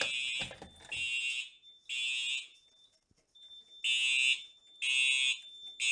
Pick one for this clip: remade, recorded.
recorded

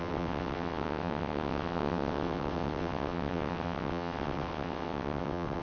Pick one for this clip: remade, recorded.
remade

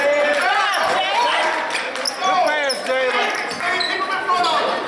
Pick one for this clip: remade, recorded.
recorded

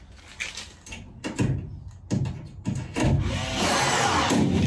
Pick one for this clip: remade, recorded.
recorded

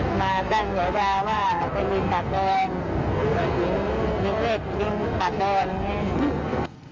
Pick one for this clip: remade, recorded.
remade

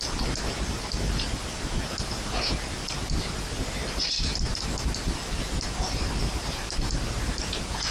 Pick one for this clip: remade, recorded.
recorded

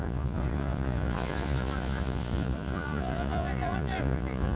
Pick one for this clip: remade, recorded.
remade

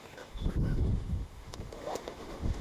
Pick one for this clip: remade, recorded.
remade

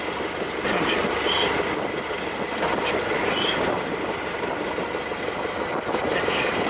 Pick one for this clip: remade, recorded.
recorded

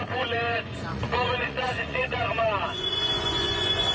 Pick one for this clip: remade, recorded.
remade